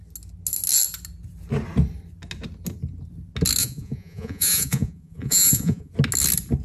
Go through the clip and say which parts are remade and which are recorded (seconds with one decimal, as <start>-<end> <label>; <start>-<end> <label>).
0.0-3.6 recorded; 3.6-5.9 remade; 5.9-6.6 recorded